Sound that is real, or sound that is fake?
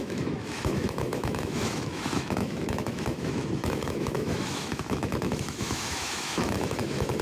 fake